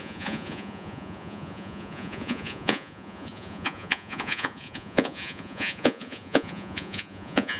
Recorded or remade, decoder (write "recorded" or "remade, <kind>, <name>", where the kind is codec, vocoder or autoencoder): remade, vocoder, Vocos